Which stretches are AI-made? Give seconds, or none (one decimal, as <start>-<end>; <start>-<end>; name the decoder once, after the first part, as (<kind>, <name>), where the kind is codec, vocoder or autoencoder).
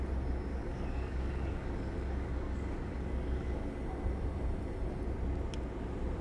0.5-3.7 (codec, DAC)